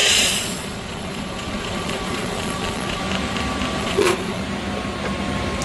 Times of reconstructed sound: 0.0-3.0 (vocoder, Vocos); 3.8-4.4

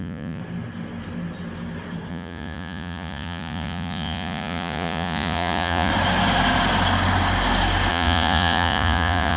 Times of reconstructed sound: 0.0-0.4 (vocoder, Vocos); 2.1-5.9; 7.9-9.4

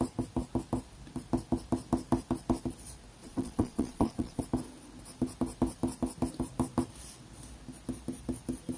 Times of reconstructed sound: 3.2-4.4 (vocoder, Vocos)

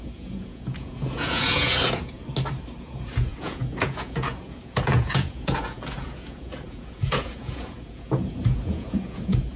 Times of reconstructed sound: 0.0-2.2 (vocoder, Vocos); 2.8-9.6

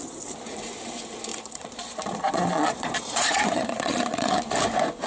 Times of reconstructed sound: 1.3-4.4 (vocoder, Vocos)

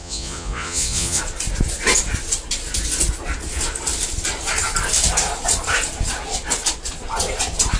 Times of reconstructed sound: 0.0-1.2 (vocoder, Vocos)

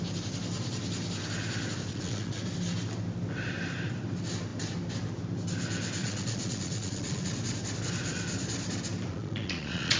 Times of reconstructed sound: 1.9-2.4 (vocoder, Vocos); 6.0-7.3; 9.1-10.0